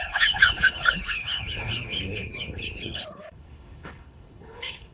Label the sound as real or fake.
fake